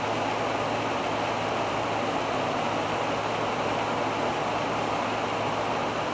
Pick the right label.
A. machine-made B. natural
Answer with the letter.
B